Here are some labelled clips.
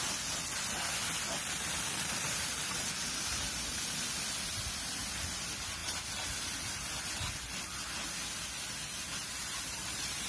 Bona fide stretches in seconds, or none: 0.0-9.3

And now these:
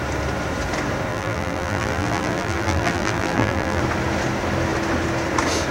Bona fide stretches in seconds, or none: 0.0-1.1; 3.8-5.7